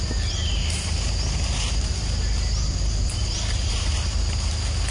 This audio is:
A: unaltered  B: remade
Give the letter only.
A